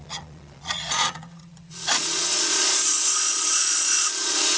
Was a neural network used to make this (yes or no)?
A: yes